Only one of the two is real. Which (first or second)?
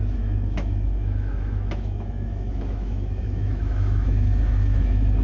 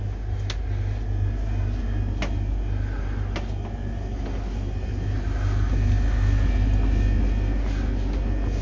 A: second